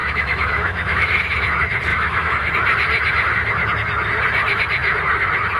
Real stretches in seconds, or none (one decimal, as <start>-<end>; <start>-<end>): 1.2-1.9; 2.5-5.6